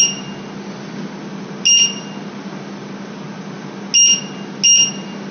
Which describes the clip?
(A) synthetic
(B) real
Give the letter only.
B